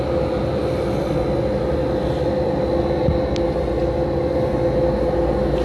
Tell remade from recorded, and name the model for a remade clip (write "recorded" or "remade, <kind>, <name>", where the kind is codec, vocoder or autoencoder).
recorded